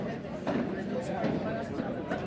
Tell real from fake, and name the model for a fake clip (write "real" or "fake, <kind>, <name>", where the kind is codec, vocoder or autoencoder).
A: real